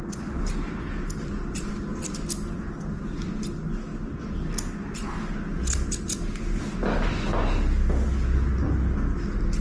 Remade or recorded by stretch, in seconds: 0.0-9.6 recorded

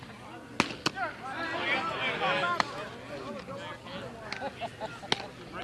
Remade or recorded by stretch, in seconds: 0.0-5.6 recorded